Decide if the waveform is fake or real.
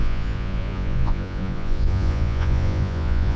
fake